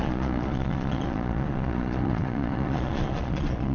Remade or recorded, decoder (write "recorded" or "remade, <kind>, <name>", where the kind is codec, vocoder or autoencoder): remade, vocoder, Vocos